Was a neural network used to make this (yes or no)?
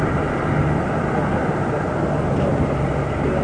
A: no